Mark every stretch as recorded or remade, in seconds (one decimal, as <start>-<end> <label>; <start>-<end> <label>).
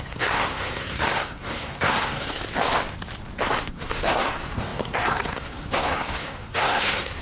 0.0-2.4 remade; 2.4-3.6 recorded; 3.6-7.2 remade